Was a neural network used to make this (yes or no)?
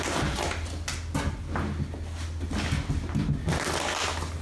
no